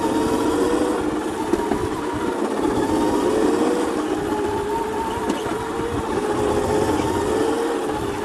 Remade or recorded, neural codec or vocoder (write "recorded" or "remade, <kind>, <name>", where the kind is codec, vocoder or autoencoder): recorded